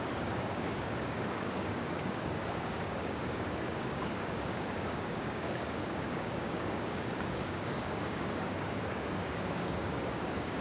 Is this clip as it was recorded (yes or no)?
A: no